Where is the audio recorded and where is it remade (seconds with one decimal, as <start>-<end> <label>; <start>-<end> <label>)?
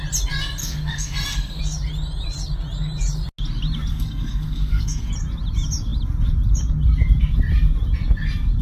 0.0-0.6 recorded; 0.6-1.6 remade; 1.6-3.9 recorded; 3.9-5.1 remade; 5.1-8.6 recorded